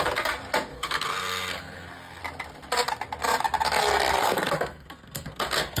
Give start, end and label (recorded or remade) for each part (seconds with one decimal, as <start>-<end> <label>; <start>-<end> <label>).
0.0-0.7 recorded; 0.7-2.2 remade; 2.2-4.2 recorded; 4.2-5.8 remade